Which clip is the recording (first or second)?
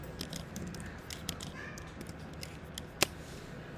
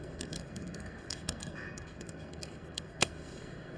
first